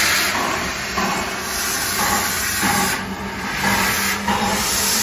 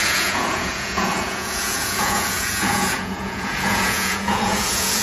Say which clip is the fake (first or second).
second